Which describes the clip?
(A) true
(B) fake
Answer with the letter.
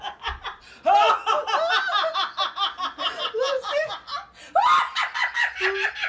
A